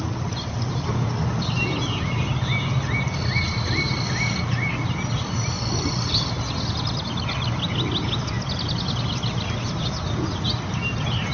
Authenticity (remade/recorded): recorded